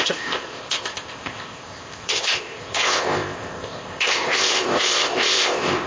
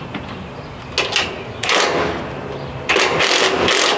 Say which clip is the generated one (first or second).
first